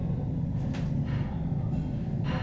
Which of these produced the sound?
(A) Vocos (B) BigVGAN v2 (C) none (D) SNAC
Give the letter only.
C